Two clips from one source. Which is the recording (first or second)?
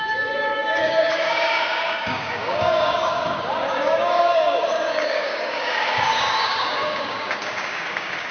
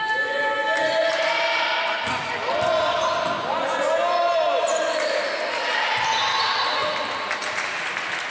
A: second